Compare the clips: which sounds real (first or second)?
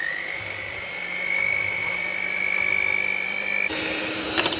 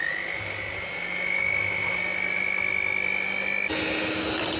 second